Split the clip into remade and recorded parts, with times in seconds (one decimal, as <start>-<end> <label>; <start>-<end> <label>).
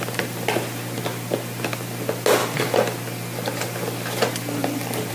0.0-5.1 recorded